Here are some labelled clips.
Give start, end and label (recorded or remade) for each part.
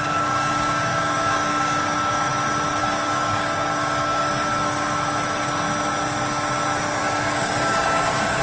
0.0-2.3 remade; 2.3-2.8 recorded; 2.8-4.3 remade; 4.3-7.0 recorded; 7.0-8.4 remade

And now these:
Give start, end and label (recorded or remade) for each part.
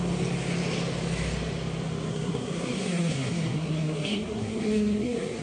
0.0-2.1 recorded; 2.1-5.4 remade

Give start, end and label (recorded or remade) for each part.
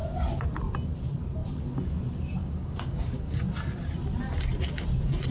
0.0-2.4 recorded; 2.4-3.4 remade; 3.4-5.3 recorded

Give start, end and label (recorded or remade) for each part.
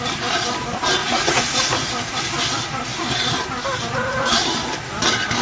0.0-1.0 recorded; 1.0-1.6 remade; 1.6-5.4 recorded